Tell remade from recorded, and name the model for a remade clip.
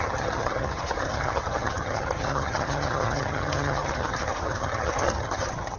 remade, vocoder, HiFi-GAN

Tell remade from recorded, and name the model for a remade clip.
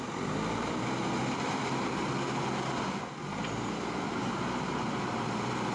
recorded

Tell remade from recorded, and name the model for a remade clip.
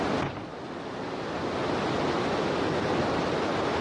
recorded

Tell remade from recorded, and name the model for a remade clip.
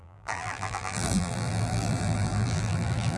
remade, vocoder, BigVGAN v2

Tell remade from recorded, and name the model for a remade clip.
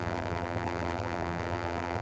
remade, vocoder, BigVGAN v2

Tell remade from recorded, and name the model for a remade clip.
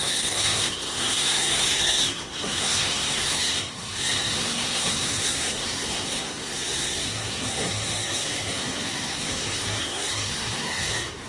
remade, codec, SNAC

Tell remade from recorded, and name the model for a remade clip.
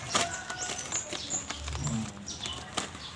recorded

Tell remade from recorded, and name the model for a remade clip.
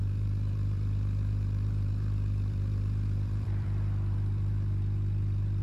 remade, vocoder, BigVGAN v2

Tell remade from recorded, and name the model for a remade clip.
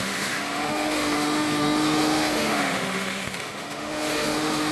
remade, autoencoder, DAC-VAE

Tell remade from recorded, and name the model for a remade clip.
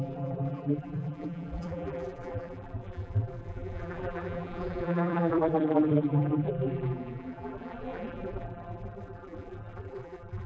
remade, vocoder, BigVGAN v2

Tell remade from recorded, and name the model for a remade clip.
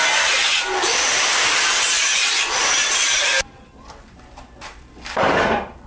recorded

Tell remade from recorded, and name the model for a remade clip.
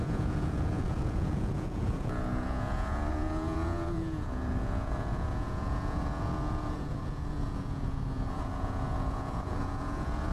remade, vocoder, Vocos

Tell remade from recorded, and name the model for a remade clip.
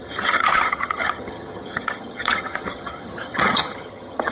remade, vocoder, HiFi-GAN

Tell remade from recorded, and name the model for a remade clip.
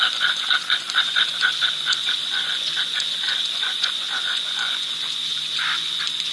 remade, vocoder, Vocos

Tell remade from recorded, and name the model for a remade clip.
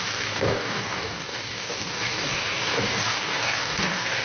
remade, codec, DAC